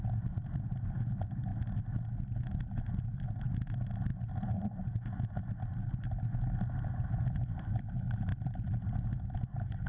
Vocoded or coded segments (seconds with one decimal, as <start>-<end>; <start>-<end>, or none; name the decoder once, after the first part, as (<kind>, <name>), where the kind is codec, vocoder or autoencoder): none

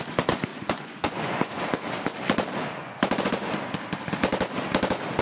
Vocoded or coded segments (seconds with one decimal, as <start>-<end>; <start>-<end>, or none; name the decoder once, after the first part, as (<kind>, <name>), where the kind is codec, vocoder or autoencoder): 0.5-1.6 (vocoder, Vocos); 2.8-3.3